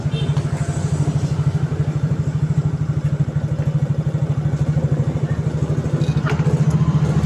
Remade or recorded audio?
recorded